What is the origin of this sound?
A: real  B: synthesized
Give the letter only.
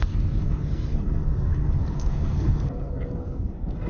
B